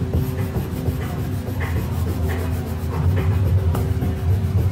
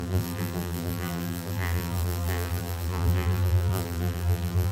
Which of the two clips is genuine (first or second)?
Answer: first